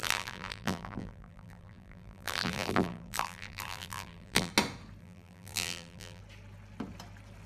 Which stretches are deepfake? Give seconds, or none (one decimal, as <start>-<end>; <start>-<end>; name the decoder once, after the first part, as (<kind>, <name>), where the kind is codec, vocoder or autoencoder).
0.0-4.5 (vocoder, BigVGAN v2); 5.0-6.2